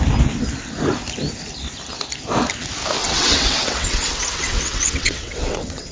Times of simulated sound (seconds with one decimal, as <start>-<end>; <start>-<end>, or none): 3.0-5.9